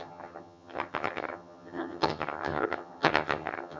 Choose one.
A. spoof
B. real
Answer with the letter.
A